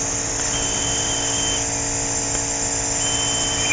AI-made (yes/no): no